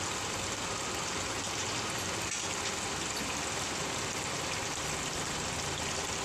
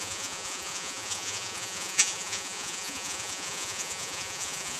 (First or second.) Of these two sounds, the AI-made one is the second